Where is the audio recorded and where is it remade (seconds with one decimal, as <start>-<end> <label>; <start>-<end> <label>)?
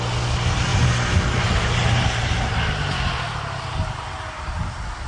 0.0-5.1 recorded